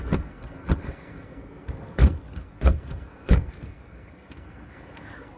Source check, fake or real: fake